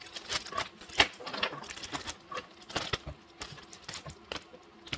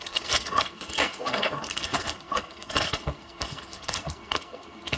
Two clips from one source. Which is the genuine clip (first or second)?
first